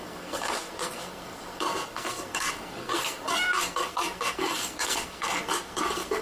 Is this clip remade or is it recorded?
remade